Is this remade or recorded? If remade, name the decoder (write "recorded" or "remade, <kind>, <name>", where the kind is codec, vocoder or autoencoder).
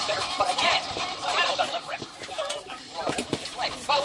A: remade, vocoder, BigVGAN v2